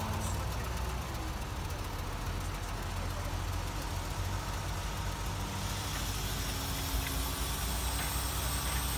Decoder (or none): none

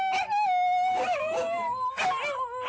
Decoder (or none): none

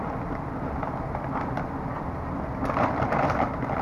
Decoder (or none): vocoder, BigVGAN v2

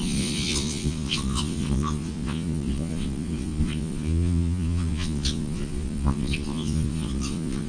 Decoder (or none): vocoder, Vocos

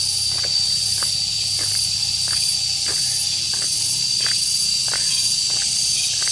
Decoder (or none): none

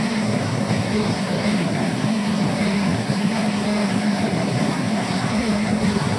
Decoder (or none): codec, SNAC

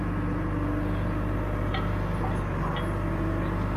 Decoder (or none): none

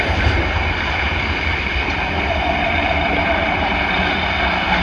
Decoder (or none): none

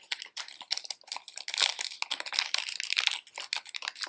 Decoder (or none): none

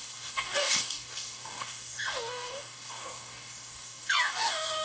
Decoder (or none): codec, DAC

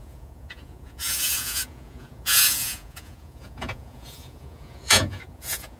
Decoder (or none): vocoder, Vocos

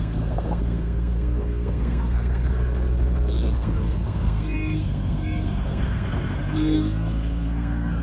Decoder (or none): codec, SNAC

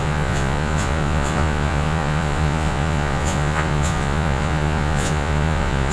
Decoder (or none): vocoder, Vocos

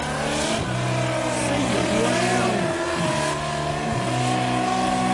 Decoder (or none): none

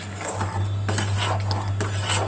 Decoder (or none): none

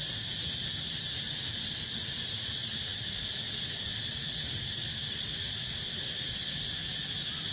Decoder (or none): none